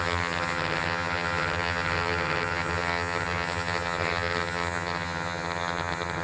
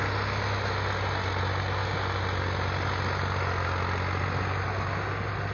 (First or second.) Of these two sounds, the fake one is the first